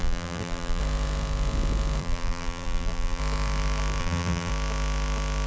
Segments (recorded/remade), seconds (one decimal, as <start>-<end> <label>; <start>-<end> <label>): 0.0-0.8 remade; 0.8-2.0 recorded; 2.0-3.2 remade; 3.2-4.0 recorded; 4.0-4.5 remade; 4.5-5.5 recorded